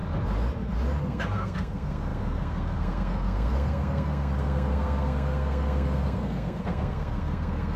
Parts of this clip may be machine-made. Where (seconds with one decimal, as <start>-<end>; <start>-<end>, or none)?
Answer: 1.0-7.8